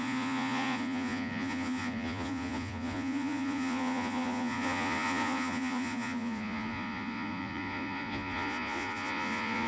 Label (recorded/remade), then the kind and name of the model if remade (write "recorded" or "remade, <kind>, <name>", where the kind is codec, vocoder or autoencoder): remade, vocoder, Vocos